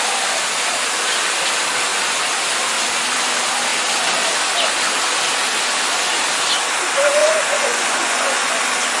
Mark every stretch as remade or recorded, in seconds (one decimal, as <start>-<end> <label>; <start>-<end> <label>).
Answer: 0.0-7.2 recorded; 7.2-8.6 remade; 8.6-9.0 recorded